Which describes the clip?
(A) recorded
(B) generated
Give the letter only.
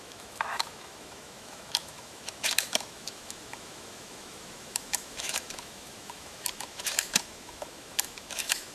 B